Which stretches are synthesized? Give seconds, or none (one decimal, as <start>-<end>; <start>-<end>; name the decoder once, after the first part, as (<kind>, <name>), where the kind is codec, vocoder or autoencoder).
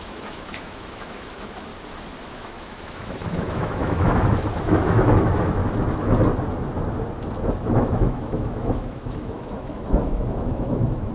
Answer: 0.0-1.7 (autoencoder, DAC-VAE); 2.2-5.6; 7.6-11.1